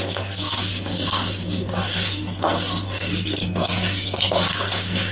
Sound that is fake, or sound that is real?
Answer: fake